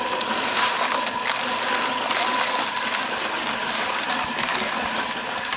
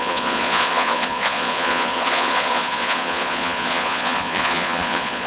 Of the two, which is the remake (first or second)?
second